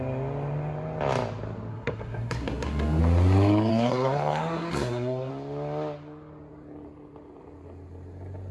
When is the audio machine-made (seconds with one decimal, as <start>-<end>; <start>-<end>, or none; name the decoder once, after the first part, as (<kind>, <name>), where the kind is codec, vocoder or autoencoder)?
1.7-3.0 (codec, SNAC); 3.7-5.3